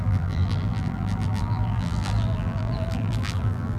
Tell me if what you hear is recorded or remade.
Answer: remade